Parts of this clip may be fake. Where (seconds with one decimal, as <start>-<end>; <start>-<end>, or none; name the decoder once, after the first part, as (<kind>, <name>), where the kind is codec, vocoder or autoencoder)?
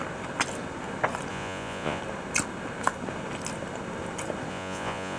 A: 1.3-2.0 (vocoder, Vocos); 4.5-5.2